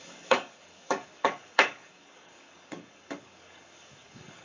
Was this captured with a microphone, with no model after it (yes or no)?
no